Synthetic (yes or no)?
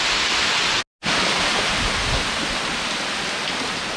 no